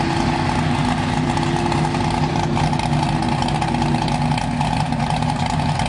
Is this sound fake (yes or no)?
no